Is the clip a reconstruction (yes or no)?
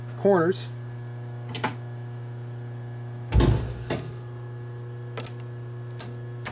no